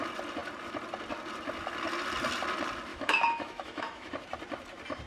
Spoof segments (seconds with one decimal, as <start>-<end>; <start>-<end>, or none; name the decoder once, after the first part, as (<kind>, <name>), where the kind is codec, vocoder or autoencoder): 2.9-4.1 (autoencoder, DAC-VAE)